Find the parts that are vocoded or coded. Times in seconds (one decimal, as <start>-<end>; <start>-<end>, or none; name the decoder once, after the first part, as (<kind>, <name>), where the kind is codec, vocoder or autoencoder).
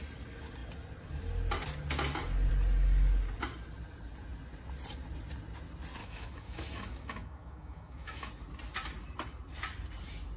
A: 6.0-8.3 (autoencoder, DAC-VAE)